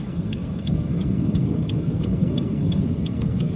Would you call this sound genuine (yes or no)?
no